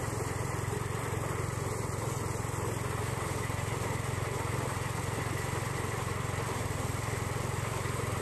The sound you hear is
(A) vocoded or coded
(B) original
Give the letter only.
B